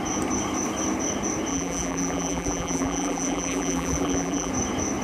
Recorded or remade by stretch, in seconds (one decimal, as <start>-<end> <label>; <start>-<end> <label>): 0.0-1.5 recorded; 1.5-4.5 remade; 4.5-5.0 recorded